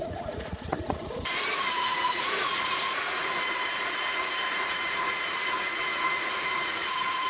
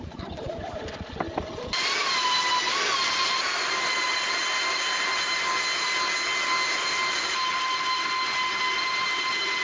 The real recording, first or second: second